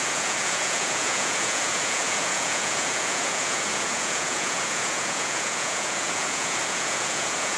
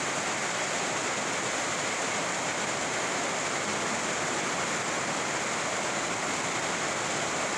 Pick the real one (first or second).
second